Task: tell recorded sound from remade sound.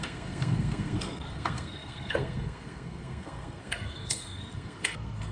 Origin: remade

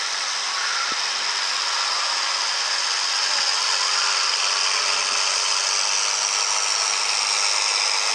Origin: recorded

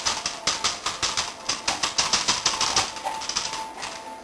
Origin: recorded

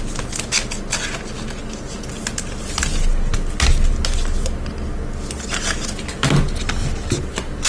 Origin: recorded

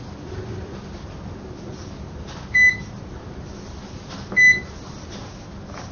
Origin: recorded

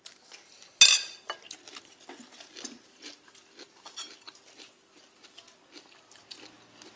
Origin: recorded